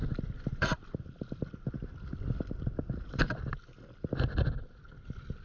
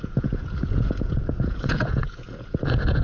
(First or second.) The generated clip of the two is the second